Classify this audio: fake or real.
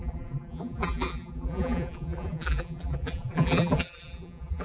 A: fake